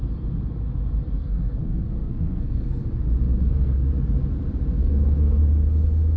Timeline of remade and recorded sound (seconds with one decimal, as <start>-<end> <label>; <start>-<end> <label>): 0.0-1.2 recorded; 1.2-2.8 remade; 2.8-3.3 recorded; 3.3-3.9 remade; 3.9-4.8 recorded; 4.8-5.4 remade; 5.4-6.2 recorded

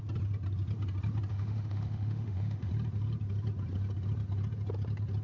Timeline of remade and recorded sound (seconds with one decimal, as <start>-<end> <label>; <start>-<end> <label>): 0.0-1.3 recorded; 1.3-2.7 remade; 2.7-5.2 recorded

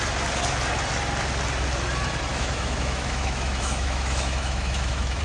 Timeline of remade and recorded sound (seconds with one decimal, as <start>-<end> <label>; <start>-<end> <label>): 0.0-2.3 recorded; 2.3-5.2 remade

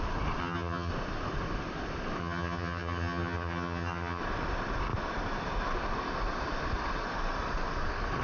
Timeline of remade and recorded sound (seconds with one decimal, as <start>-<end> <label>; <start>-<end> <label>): 0.0-0.4 recorded; 0.4-0.9 remade; 0.9-2.2 recorded; 2.2-4.2 remade; 4.2-8.2 recorded

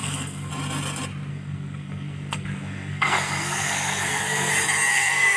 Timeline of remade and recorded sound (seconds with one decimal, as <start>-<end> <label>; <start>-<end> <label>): 0.0-0.5 remade; 0.5-1.3 recorded; 1.3-4.5 remade; 4.5-4.9 recorded; 4.9-5.4 remade

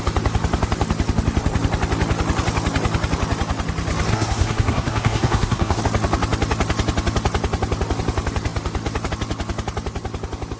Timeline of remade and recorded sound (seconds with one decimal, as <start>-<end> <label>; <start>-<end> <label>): 0.0-4.1 recorded; 4.1-5.8 remade; 5.8-10.6 recorded